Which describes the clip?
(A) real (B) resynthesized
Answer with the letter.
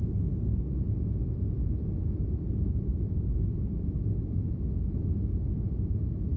A